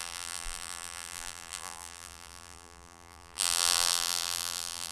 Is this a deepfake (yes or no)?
yes